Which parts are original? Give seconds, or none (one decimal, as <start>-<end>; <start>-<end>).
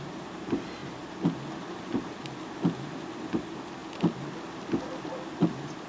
0.0-5.9